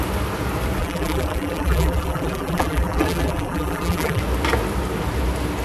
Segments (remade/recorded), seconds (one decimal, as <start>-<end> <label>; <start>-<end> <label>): 0.0-0.8 recorded; 0.8-4.2 remade; 4.2-5.6 recorded